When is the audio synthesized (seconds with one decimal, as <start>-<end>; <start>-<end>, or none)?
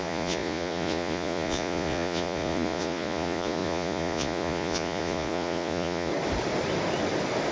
0.0-6.1